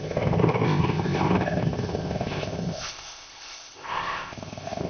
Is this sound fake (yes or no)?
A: yes